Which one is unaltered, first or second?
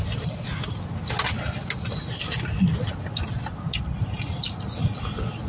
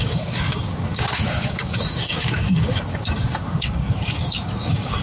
first